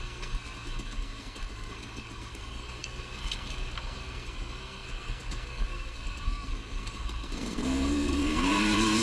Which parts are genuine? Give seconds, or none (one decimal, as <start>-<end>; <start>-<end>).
none